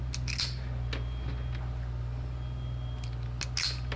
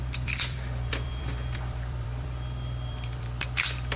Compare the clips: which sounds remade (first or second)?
second